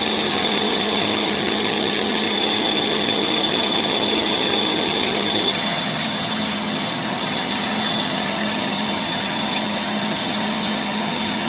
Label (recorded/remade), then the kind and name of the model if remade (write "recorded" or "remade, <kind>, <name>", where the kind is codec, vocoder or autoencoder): remade, vocoder, HiFi-GAN